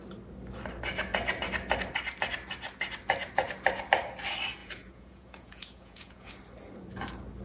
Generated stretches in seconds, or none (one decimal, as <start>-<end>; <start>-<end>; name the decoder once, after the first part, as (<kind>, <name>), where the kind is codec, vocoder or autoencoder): 4.6-6.3 (vocoder, Vocos)